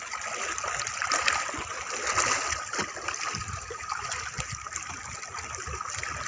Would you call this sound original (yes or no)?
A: yes